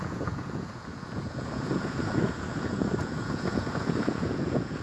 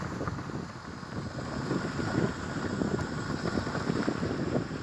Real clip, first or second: second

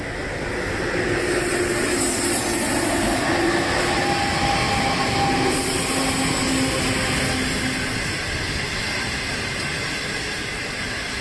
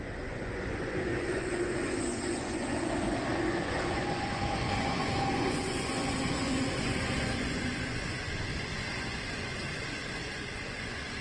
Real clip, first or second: first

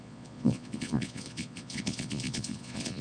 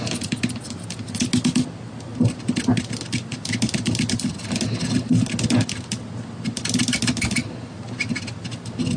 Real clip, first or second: second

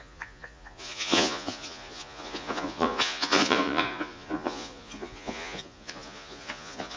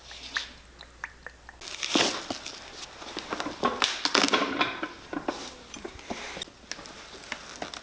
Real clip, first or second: second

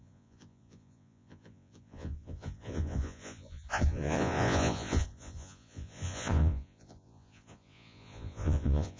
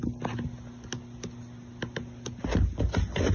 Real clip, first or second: second